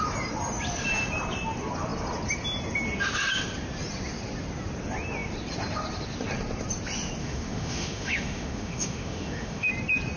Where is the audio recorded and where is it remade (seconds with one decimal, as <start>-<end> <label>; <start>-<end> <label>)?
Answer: 0.0-7.2 recorded; 7.2-9.7 remade; 9.7-10.2 recorded